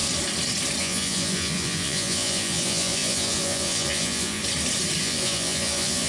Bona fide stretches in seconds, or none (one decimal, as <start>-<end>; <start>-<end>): 0.0-0.8; 4.4-5.0